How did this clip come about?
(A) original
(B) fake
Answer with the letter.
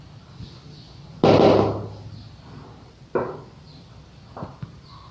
A